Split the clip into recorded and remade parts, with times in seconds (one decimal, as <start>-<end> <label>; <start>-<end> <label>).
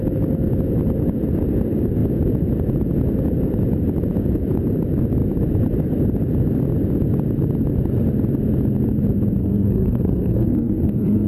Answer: 0.0-9.4 recorded; 9.4-11.3 remade